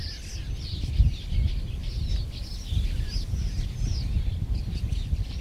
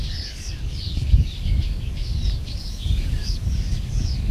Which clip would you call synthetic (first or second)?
second